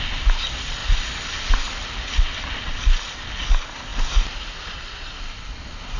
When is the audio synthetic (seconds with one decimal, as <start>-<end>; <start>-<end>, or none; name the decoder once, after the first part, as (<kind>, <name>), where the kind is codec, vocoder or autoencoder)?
none